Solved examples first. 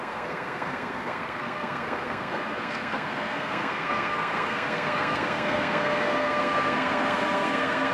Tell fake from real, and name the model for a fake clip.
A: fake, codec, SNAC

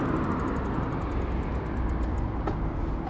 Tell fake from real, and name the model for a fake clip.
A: real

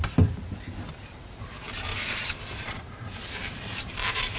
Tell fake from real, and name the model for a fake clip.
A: fake, vocoder, BigVGAN v2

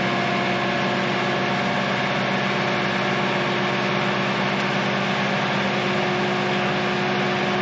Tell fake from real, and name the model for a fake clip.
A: real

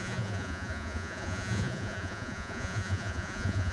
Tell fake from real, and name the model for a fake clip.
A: fake, vocoder, Vocos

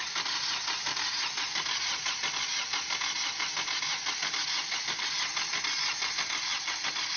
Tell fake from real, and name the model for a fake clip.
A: real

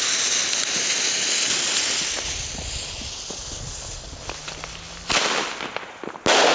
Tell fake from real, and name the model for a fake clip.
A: real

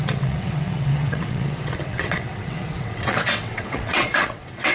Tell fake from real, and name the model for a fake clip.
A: fake, vocoder, WaveNeXt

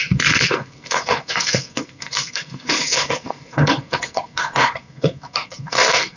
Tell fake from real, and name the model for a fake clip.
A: fake, codec, SNAC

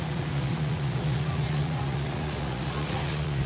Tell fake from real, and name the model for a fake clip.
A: fake, vocoder, Vocos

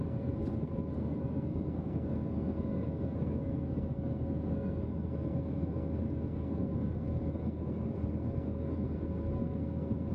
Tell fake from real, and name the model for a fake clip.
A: fake, codec, SNAC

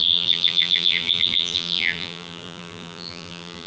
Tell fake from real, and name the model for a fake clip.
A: fake, vocoder, BigVGAN v2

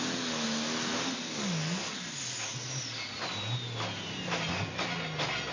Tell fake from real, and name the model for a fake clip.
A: real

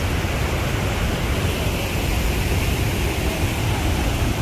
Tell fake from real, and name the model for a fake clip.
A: fake, vocoder, BigVGAN v2